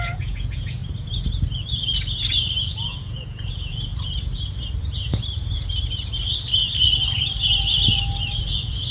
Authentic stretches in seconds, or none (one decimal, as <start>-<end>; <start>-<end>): 0.8-2.6; 3.9-8.4